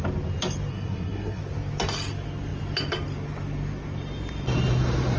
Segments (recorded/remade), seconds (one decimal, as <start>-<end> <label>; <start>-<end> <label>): 0.0-0.7 recorded; 0.7-1.4 remade; 1.4-5.2 recorded